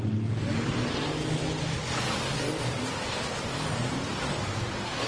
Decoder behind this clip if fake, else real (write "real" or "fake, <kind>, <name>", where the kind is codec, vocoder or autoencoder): real